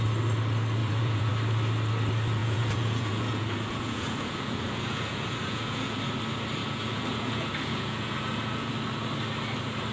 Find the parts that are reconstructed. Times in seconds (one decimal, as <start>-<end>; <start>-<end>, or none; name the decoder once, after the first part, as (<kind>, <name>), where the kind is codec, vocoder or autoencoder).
0.8-1.3 (vocoder, Vocos); 2.4-6.0; 6.6-8.7